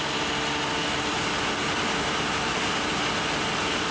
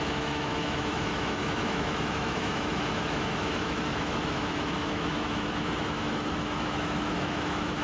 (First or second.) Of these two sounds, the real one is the first